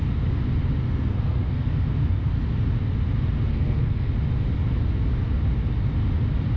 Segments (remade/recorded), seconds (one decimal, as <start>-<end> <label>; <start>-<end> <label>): 0.0-0.8 recorded; 0.8-2.4 remade; 2.4-3.5 recorded; 3.5-4.1 remade; 4.1-6.6 recorded